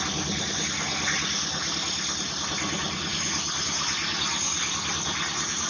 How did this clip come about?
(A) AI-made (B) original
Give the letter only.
B